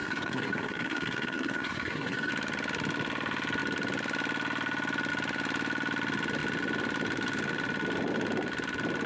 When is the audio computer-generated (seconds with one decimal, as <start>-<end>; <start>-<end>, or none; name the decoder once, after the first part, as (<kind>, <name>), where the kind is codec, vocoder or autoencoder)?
0.0-2.3 (codec, SNAC)